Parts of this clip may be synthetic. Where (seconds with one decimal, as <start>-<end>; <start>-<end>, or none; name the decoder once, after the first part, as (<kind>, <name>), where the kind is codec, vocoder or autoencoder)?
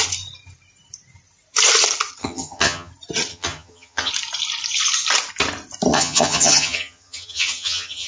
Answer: 2.2-2.9 (vocoder, HiFi-GAN); 3.3-4.1; 5.9-8.1